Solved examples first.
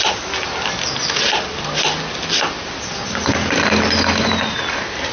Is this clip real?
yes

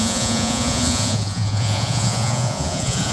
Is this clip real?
no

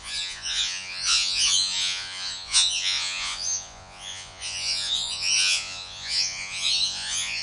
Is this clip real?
no